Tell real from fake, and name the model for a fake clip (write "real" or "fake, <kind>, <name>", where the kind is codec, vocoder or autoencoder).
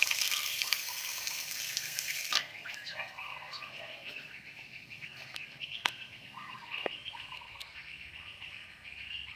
fake, codec, SNAC